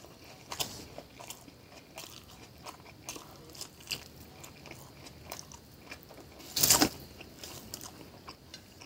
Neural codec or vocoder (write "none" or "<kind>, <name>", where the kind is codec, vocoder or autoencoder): none